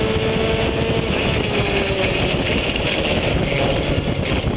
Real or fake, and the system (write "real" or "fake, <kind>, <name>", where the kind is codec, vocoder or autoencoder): real